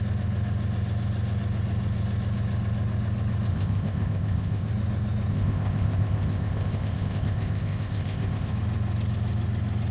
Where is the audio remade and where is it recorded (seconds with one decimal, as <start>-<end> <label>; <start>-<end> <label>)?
0.0-3.5 recorded; 3.5-4.7 remade; 4.7-5.3 recorded; 5.3-8.5 remade; 8.5-9.9 recorded